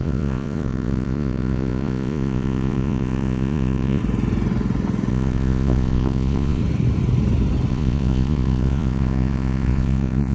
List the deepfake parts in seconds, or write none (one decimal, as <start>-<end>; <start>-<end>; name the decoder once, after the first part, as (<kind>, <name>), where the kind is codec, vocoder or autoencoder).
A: 0.0-4.0 (vocoder, Vocos); 5.1-6.6; 7.7-10.3